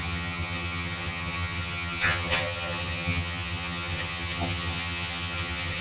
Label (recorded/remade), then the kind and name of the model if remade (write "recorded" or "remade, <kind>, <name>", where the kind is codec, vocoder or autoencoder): remade, vocoder, HiFi-GAN